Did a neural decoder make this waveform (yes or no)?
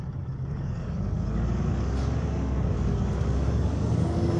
yes